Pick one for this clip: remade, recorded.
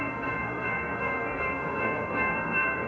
remade